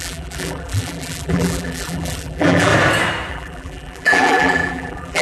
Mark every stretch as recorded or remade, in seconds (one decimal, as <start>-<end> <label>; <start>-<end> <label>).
0.0-2.7 remade; 2.7-3.3 recorded; 3.3-5.2 remade